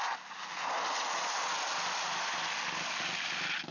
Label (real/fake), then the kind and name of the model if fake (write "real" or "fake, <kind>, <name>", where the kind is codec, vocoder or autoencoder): real